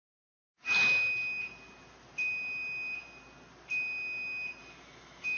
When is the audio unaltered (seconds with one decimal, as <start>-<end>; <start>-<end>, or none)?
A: 0.0-4.6